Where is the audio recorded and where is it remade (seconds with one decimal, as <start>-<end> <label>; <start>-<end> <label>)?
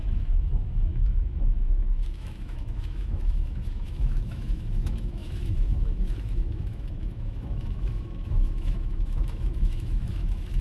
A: 0.0-10.6 remade